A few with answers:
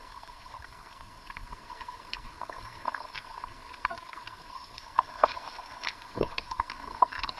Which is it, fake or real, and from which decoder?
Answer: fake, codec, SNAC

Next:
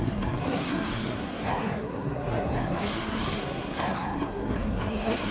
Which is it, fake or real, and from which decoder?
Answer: fake, codec, SNAC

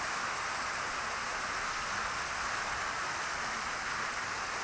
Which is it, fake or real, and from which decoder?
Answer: real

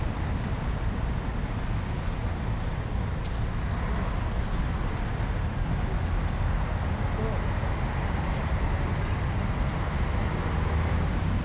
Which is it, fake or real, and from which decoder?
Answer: real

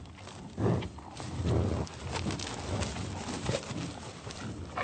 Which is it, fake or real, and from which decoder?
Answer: real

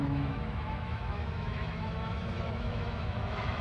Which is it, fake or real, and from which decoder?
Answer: fake, autoencoder, DAC-VAE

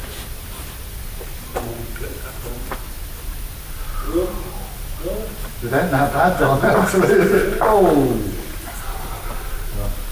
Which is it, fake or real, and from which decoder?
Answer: real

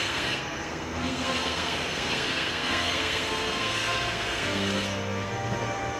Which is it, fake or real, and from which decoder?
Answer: fake, codec, SNAC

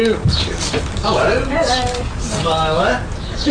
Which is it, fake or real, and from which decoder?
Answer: fake, codec, DAC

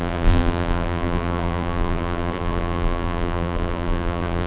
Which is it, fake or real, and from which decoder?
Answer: fake, vocoder, BigVGAN v2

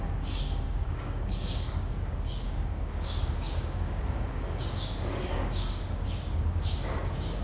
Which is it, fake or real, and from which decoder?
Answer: fake, codec, DAC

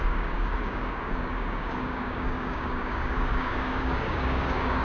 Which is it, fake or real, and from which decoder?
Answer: fake, codec, DAC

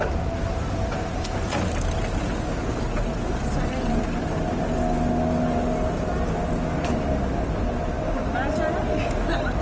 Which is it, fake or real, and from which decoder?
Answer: real